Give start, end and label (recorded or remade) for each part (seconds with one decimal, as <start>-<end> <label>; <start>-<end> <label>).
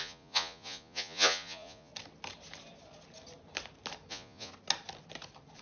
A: 0.0-1.9 remade; 1.9-4.1 recorded; 4.1-4.5 remade; 4.5-5.6 recorded